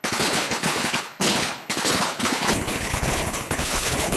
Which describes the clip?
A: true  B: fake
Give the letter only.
B